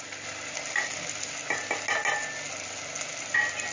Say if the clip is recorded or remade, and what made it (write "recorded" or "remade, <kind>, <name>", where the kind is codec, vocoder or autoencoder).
recorded